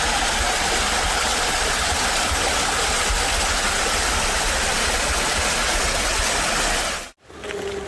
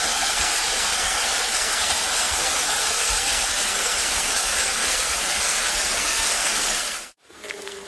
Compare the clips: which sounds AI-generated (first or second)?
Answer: second